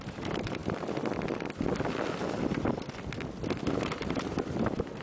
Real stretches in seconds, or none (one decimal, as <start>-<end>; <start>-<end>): 0.6-3.6